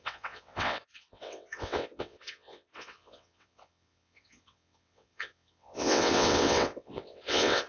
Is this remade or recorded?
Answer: remade